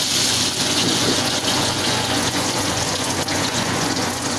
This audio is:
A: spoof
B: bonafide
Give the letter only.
A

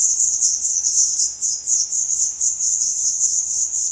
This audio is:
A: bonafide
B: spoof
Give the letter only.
B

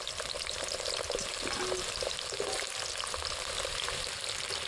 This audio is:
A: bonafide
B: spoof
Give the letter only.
A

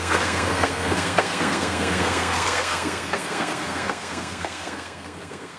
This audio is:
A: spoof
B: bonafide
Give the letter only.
A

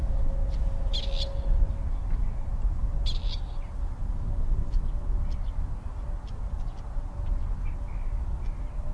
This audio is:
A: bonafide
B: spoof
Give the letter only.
A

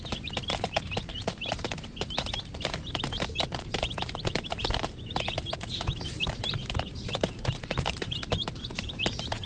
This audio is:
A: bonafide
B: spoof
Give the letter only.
B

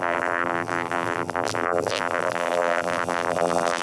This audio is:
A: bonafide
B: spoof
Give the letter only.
B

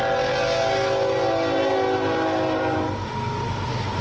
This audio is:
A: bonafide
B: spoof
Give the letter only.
A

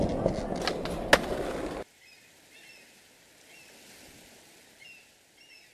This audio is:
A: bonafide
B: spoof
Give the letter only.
A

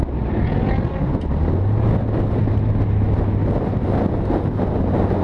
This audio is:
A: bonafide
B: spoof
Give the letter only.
A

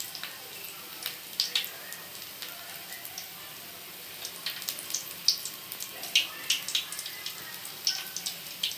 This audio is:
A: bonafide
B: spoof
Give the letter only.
A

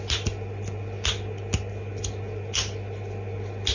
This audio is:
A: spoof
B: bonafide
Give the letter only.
B